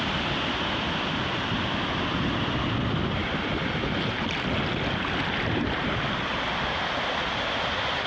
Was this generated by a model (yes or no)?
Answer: no